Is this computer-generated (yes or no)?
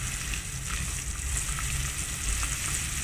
no